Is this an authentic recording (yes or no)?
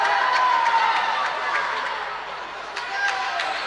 yes